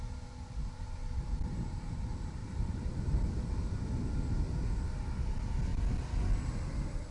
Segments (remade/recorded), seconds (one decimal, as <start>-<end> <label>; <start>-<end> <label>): 0.0-2.4 recorded; 2.4-3.1 remade; 3.1-7.1 recorded